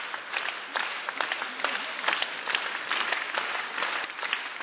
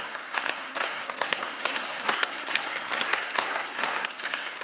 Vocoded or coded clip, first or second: second